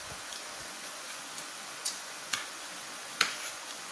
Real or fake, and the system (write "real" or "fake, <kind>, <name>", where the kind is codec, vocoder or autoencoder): fake, vocoder, Vocos